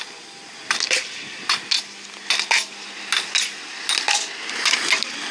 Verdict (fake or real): real